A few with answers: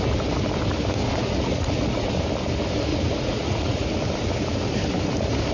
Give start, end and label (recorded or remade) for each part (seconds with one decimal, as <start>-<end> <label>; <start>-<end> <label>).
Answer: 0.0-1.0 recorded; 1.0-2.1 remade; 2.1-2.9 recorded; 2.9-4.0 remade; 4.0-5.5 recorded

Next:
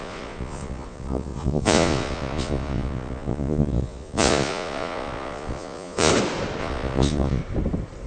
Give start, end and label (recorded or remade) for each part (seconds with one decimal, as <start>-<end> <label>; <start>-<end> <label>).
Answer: 0.0-6.1 remade; 6.1-6.6 recorded; 6.6-7.4 remade; 7.4-8.1 recorded

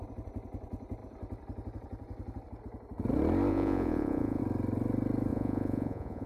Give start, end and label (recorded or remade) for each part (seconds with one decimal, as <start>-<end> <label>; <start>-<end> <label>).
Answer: 0.0-3.5 recorded; 3.5-4.4 remade; 4.4-5.3 recorded; 5.3-6.3 remade